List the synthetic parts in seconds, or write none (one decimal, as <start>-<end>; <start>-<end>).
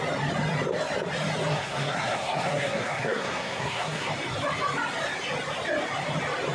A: 1.5-4.1